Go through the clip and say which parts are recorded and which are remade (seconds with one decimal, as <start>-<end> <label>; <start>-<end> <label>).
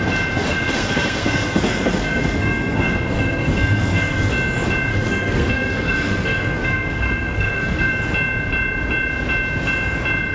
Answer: 0.0-0.4 recorded; 0.4-4.3 remade; 4.3-4.9 recorded; 4.9-7.9 remade; 7.9-10.3 recorded